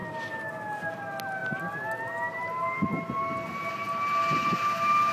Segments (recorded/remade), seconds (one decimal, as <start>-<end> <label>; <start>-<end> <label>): 0.0-5.1 recorded